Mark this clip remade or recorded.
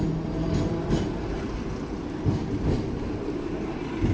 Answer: recorded